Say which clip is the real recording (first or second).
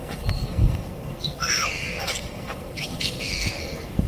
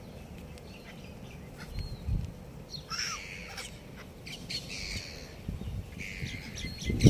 second